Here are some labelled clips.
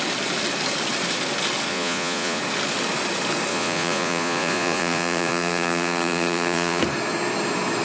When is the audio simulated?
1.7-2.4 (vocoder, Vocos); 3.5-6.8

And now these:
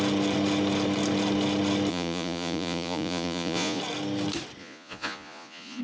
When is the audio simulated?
1.9-3.8 (vocoder, Vocos); 4.6-5.8